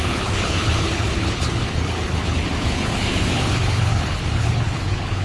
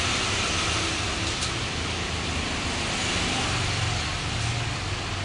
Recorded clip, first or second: second